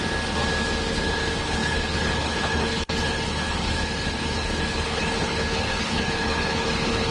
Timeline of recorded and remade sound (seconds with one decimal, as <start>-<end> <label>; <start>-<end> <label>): 0.0-0.9 recorded; 0.9-7.1 remade